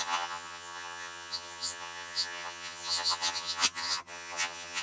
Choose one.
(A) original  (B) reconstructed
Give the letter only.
B